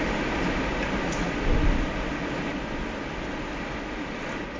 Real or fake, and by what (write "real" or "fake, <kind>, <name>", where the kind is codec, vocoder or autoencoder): real